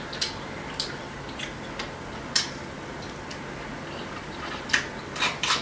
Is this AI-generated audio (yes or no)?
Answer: no